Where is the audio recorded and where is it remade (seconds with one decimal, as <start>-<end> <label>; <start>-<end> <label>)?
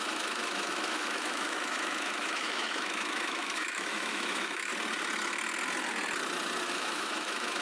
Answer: 0.0-4.7 remade; 4.7-6.7 recorded; 6.7-7.6 remade